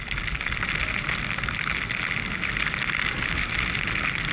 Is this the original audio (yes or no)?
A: yes